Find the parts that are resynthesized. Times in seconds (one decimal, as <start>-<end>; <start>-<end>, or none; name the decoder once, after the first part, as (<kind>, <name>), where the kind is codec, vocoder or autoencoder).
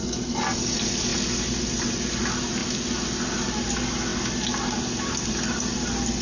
none